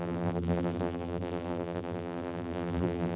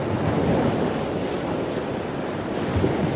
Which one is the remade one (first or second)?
first